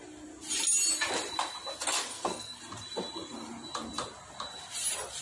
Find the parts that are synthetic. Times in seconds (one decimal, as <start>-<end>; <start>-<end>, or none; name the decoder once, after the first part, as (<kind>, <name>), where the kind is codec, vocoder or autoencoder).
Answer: 2.1-2.6 (codec, SNAC)